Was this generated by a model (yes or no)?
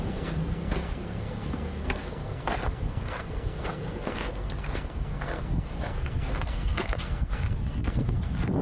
yes